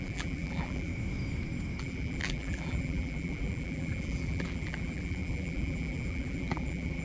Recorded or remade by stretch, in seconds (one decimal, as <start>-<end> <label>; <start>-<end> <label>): 0.0-0.9 remade; 0.9-1.8 recorded; 1.8-7.0 remade